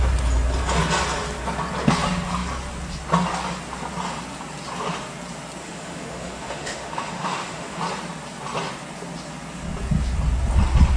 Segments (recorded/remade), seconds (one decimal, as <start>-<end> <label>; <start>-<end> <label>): 0.0-5.6 recorded; 5.6-7.8 remade; 7.8-11.0 recorded